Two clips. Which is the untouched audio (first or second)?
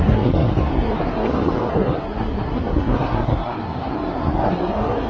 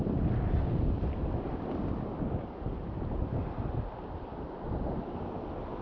second